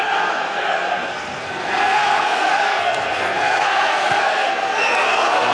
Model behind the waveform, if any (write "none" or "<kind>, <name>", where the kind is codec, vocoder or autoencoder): codec, SNAC